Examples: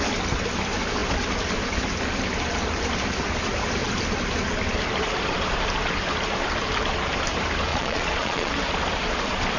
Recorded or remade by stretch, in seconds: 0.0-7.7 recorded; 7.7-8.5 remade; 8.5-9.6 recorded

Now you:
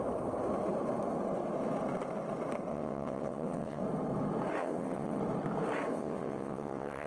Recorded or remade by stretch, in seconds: 0.0-2.7 recorded; 2.7-3.8 remade; 3.8-4.6 recorded; 4.6-5.2 remade; 5.2-5.9 recorded; 5.9-7.1 remade

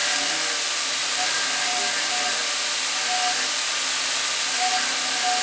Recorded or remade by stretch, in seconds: 0.0-5.4 recorded

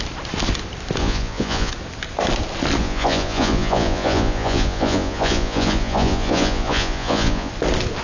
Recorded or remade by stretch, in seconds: 0.0-1.0 recorded; 1.0-1.7 remade; 1.7-2.8 recorded; 2.8-7.5 remade; 7.5-8.0 recorded

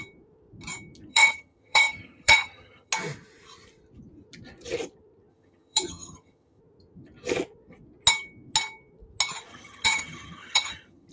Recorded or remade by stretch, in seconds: 0.0-1.1 recorded; 1.1-2.9 remade; 2.9-5.3 recorded; 5.3-6.6 remade; 6.6-9.5 recorded; 9.5-11.1 remade

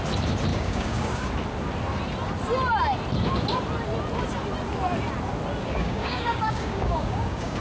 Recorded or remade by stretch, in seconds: 0.0-0.5 recorded; 0.5-1.3 remade; 1.3-5.6 recorded; 5.6-7.6 remade